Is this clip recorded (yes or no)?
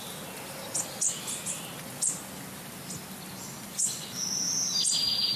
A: yes